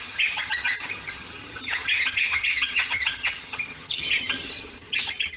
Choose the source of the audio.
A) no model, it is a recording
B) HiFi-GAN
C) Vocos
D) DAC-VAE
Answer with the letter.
B